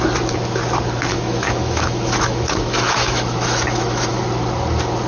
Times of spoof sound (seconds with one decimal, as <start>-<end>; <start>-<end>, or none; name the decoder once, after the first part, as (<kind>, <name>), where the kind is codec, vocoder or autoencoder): 1.1-4.2 (autoencoder, DAC-VAE)